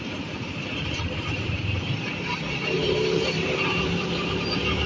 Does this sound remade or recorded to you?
remade